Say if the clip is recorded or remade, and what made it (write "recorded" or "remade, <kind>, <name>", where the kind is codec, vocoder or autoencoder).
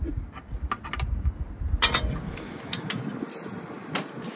recorded